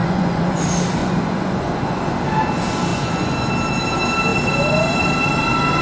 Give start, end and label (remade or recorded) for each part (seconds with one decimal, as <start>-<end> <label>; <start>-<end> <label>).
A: 0.0-0.6 remade; 0.6-1.0 recorded; 1.0-2.0 remade; 2.0-2.9 recorded; 2.9-3.5 remade; 3.5-5.8 recorded